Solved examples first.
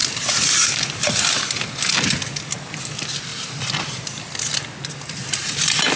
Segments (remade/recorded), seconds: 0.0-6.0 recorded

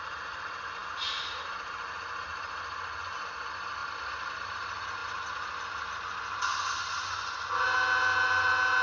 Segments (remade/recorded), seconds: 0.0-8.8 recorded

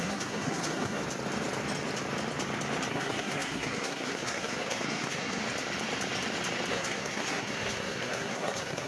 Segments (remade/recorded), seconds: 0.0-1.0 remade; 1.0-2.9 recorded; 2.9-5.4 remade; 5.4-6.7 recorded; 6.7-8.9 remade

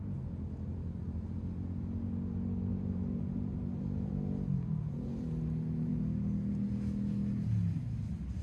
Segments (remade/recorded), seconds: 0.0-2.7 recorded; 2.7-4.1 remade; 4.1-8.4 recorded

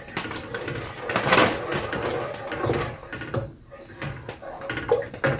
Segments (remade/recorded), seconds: 0.0-5.4 recorded

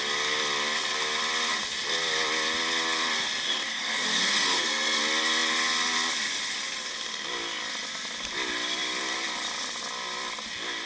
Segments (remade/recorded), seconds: 0.0-3.7 recorded; 3.7-5.0 remade; 5.0-10.9 recorded

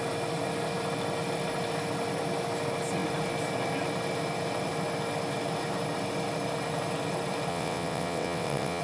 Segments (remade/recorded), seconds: 0.0-7.5 recorded; 7.5-8.8 remade

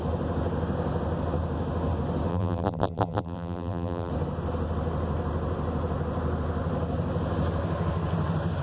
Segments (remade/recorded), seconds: 0.0-2.3 recorded; 2.3-4.1 remade; 4.1-8.6 recorded